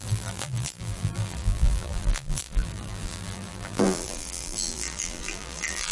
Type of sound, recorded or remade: remade